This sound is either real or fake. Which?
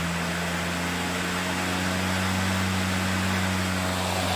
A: real